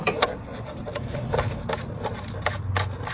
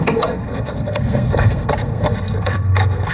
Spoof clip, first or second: second